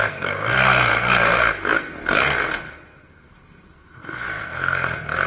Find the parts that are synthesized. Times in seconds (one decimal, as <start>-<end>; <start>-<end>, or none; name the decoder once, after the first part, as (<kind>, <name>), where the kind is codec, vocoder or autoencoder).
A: 0.0-5.3 (codec, SNAC)